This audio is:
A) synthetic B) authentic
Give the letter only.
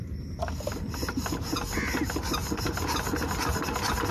B